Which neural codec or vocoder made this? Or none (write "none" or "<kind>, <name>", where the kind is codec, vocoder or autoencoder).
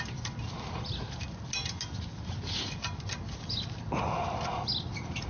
none